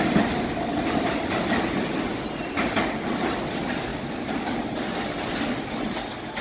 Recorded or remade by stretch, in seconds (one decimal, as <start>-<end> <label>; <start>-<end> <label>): 0.0-3.9 recorded; 3.9-5.3 remade; 5.3-6.4 recorded